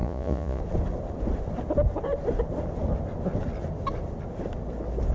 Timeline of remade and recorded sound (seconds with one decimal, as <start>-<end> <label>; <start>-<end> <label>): 0.0-0.6 remade; 0.6-5.1 recorded